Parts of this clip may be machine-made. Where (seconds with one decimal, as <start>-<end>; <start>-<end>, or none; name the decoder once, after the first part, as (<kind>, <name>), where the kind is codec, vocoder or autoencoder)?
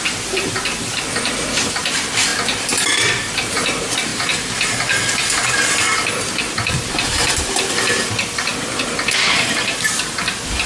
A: 0.0-4.1 (vocoder, BigVGAN v2); 5.1-8.5; 9.2-10.7